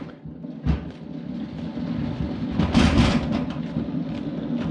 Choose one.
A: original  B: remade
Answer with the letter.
A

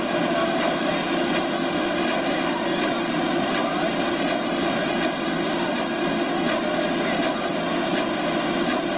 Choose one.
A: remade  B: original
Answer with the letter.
B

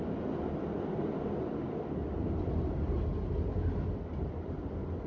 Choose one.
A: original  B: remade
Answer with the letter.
A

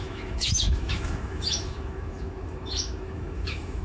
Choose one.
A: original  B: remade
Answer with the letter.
B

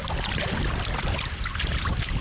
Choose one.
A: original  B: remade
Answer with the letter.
B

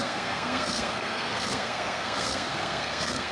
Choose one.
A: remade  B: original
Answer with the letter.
A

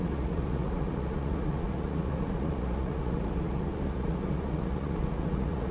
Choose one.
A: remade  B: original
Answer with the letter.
A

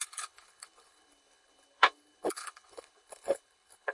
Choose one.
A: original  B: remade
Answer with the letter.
B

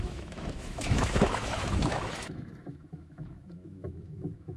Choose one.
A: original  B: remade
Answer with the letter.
B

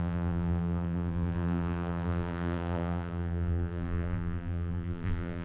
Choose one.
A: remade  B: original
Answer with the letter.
A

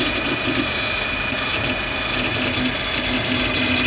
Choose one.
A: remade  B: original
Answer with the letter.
B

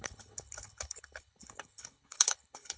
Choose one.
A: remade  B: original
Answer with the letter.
A